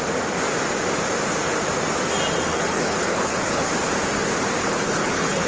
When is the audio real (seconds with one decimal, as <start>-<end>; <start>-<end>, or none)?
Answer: 0.0-2.5; 3.7-4.6